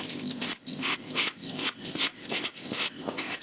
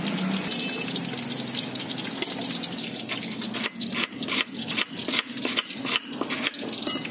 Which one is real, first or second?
second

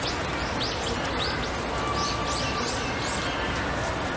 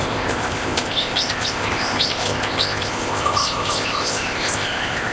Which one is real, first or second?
first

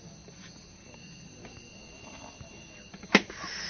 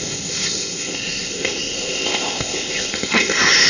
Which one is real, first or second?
first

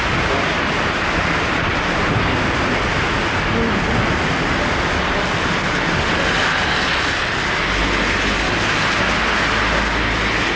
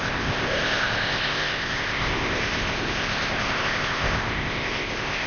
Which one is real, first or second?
first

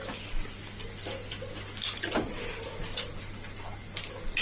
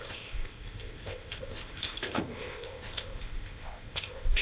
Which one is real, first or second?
first